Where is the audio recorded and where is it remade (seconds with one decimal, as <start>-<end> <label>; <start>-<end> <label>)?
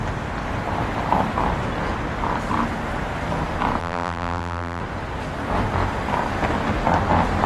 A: 0.0-3.8 recorded; 3.8-4.8 remade; 4.8-7.5 recorded